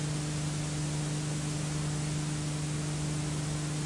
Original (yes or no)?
yes